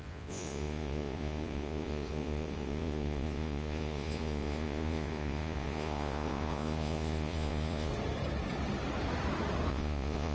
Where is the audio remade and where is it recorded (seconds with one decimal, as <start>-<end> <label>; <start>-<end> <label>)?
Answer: 0.0-7.9 remade; 7.9-9.7 recorded; 9.7-10.3 remade